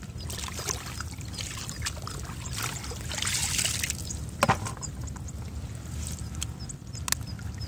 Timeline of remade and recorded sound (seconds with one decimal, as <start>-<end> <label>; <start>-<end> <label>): 0.0-7.7 recorded